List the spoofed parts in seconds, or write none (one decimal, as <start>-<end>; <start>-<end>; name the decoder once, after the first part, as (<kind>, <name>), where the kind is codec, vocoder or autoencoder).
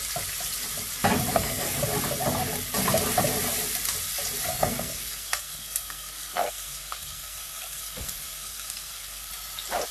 1.3-1.8 (codec, SNAC); 4.5-9.3